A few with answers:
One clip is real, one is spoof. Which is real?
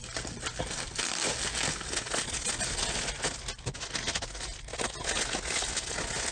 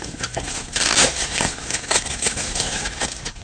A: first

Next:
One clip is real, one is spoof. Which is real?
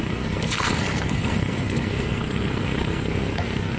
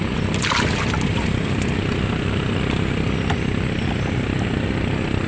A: second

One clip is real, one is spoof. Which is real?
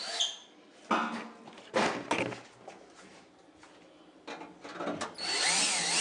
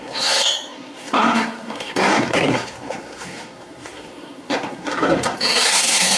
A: first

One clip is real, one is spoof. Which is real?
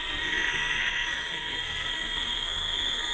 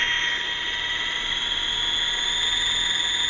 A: second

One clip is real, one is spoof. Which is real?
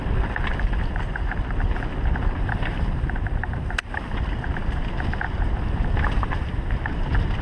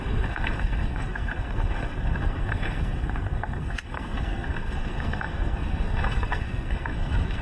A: first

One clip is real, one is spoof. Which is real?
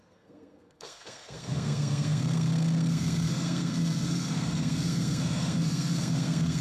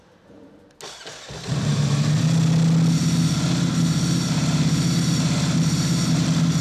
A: second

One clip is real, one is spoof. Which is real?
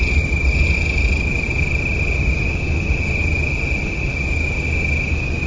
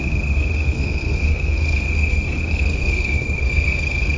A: first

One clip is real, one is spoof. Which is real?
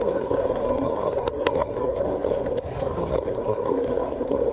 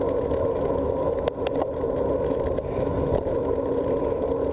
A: second